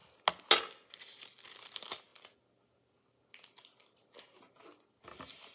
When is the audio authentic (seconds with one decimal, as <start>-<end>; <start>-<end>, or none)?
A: 0.0-5.5